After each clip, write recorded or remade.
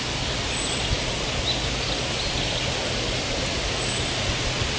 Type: recorded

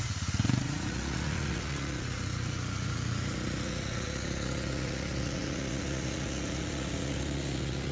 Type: remade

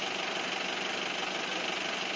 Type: recorded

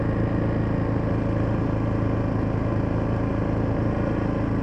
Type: recorded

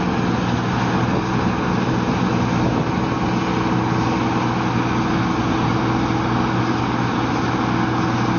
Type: recorded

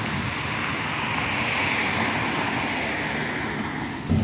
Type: recorded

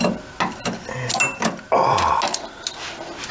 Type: recorded